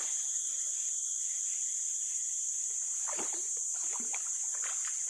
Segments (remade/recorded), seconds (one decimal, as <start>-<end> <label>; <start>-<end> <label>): 0.0-5.1 recorded